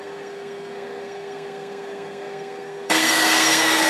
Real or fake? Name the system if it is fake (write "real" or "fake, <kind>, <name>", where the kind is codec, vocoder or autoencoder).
fake, codec, SNAC